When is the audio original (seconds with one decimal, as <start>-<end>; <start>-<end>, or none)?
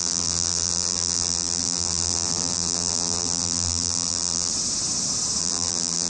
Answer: 4.5-5.4